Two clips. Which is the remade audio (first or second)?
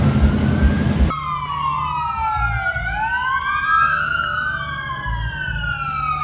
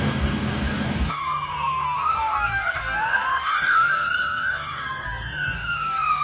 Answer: second